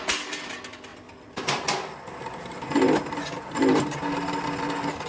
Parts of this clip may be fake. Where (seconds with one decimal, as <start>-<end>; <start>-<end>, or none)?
none